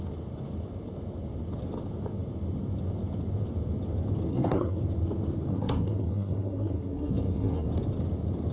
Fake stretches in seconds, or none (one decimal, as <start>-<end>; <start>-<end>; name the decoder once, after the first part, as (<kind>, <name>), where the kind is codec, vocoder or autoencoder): 4.3-4.8 (codec, SNAC); 5.5-7.7